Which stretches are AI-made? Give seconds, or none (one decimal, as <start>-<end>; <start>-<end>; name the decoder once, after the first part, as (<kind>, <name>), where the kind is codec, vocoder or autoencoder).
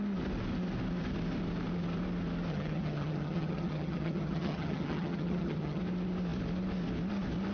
2.5-5.8 (vocoder, HiFi-GAN)